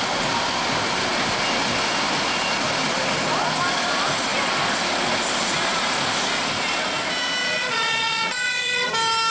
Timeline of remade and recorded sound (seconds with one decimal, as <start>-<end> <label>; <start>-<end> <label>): 0.0-7.4 recorded; 7.4-8.9 remade; 8.9-9.3 recorded